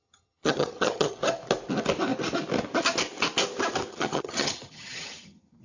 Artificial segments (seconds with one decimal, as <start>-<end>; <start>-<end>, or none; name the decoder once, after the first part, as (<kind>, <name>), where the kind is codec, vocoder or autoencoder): 0.0-1.2 (vocoder, HiFi-GAN); 3.9-5.6